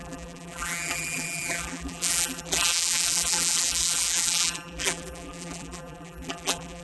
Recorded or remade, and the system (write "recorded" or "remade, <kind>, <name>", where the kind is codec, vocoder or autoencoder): remade, vocoder, BigVGAN v2